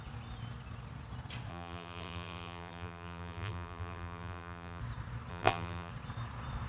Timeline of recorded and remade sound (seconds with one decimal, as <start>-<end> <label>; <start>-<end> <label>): 0.0-1.5 recorded; 1.5-4.8 remade; 4.8-5.3 recorded; 5.3-5.9 remade; 5.9-6.7 recorded